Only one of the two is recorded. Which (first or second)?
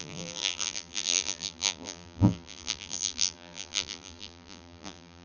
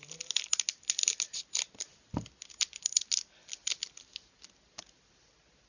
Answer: second